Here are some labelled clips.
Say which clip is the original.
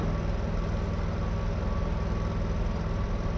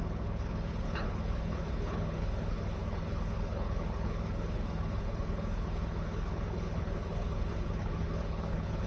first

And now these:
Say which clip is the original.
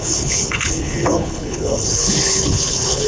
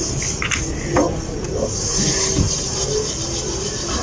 second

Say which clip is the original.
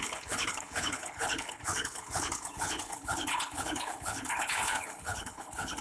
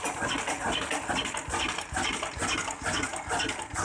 second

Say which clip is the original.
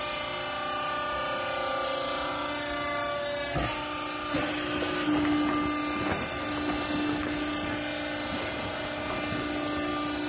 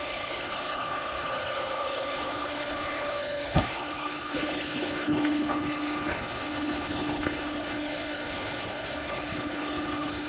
first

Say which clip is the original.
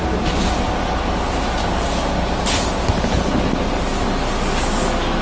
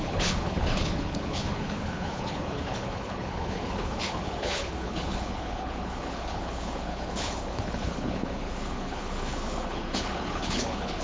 first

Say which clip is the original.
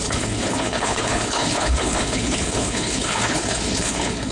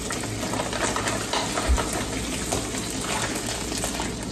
second